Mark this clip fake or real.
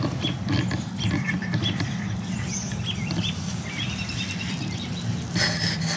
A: real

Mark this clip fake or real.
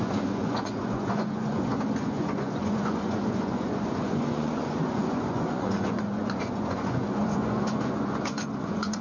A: fake